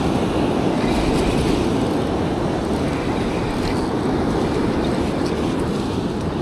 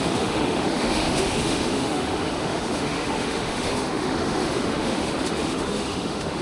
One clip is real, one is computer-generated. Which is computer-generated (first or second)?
second